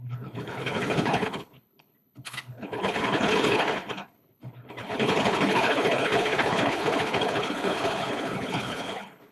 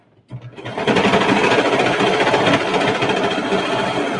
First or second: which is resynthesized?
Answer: first